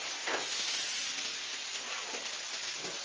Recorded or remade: recorded